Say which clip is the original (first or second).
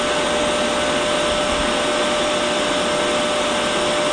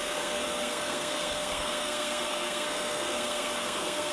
first